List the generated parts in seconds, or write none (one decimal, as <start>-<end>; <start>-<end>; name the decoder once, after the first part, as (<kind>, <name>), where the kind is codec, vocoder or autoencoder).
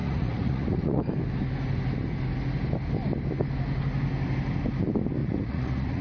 0.0-1.0 (vocoder, Vocos); 5.2-6.0